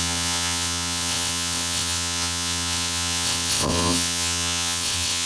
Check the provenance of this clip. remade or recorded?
remade